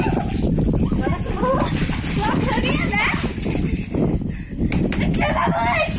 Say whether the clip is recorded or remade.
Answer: recorded